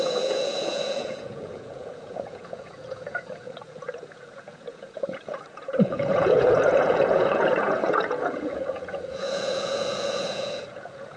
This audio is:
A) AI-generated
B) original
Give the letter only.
A